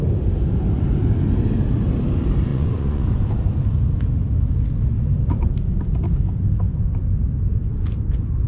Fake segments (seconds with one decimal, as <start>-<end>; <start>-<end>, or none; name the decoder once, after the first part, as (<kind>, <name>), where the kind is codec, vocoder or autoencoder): 2.5-3.3 (vocoder, Vocos)